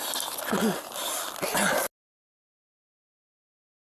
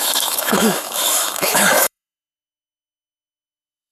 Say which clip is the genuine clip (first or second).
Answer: first